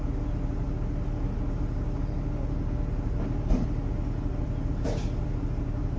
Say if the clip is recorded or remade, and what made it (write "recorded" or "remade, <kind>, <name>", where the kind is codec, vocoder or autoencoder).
recorded